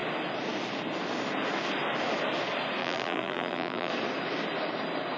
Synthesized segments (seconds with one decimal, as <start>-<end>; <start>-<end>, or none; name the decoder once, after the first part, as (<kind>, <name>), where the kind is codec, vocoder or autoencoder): 2.8-3.9 (vocoder, BigVGAN v2)